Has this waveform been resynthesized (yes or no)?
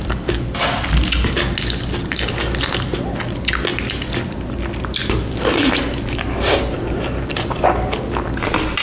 no